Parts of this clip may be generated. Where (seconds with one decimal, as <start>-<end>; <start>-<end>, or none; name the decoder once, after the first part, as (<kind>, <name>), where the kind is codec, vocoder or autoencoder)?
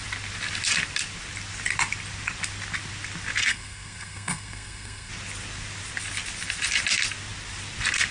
3.5-5.1 (codec, SNAC)